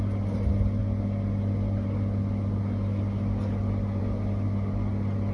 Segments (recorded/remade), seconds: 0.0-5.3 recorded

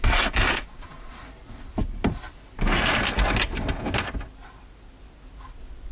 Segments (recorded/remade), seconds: 0.0-0.5 recorded; 0.5-1.2 remade; 1.2-5.9 recorded

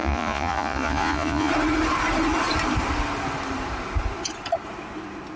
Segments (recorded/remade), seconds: 0.0-1.5 remade; 1.5-5.4 recorded